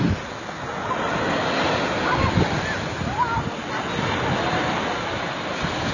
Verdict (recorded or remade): recorded